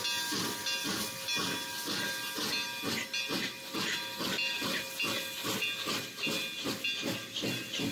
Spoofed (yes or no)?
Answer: no